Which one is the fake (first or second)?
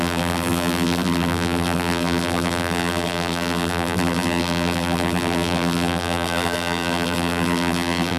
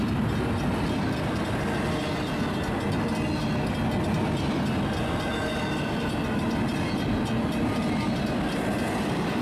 first